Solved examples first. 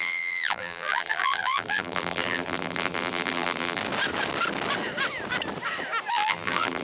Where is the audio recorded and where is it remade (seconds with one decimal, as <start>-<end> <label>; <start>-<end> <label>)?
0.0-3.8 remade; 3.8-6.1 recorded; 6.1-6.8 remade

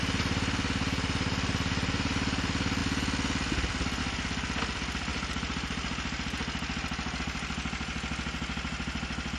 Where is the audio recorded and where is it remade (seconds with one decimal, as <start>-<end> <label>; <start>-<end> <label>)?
0.0-9.4 recorded

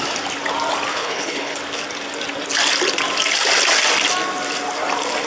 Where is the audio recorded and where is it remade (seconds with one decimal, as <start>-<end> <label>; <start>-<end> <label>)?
0.0-0.9 recorded; 0.9-1.6 remade; 1.6-5.3 recorded

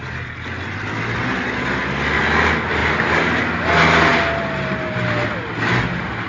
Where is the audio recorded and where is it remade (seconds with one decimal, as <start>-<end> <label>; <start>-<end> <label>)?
0.0-6.3 recorded

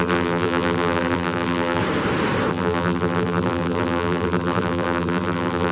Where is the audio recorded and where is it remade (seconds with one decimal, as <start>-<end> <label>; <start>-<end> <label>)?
0.0-1.8 remade; 1.8-2.5 recorded; 2.5-5.7 remade